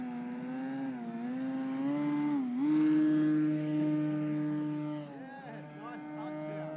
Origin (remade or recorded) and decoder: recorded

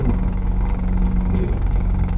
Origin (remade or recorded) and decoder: remade, codec, DAC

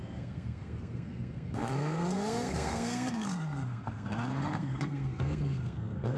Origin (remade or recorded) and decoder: remade, codec, SNAC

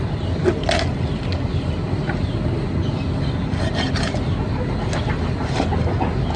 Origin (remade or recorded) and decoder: recorded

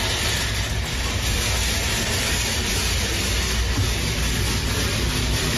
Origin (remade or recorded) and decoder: recorded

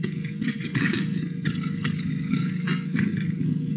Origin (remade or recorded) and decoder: remade, codec, SNAC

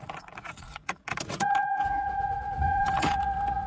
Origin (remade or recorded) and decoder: remade, vocoder, Vocos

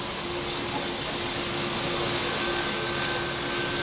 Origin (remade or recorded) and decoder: remade, codec, DAC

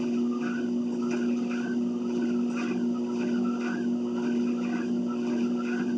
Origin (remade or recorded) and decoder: recorded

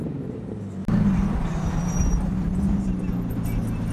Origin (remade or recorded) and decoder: recorded